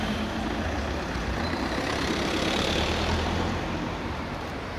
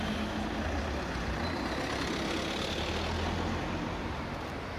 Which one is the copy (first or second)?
first